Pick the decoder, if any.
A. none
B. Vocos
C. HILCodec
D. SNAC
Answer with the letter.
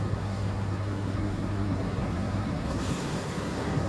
D